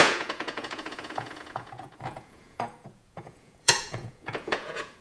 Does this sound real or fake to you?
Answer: fake